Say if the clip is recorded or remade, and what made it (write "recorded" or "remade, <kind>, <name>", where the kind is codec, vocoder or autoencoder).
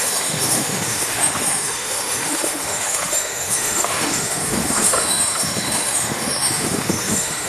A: remade, autoencoder, DAC-VAE